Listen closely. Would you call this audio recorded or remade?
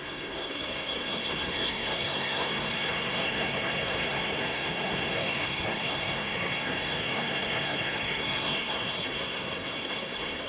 remade